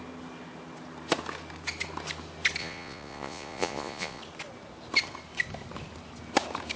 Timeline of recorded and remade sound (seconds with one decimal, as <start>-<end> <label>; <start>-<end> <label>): 0.0-2.6 recorded; 2.6-4.2 remade; 4.2-6.8 recorded